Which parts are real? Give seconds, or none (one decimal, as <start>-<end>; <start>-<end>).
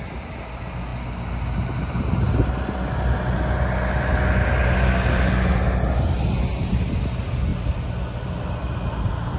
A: 0.0-9.4